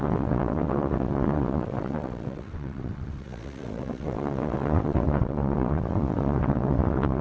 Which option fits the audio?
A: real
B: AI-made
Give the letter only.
B